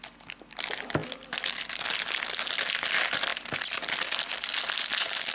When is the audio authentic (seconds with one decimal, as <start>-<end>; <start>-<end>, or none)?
0.0-5.3